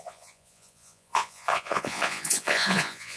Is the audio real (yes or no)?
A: no